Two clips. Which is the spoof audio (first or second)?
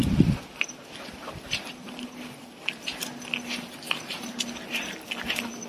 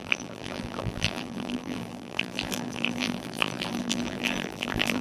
second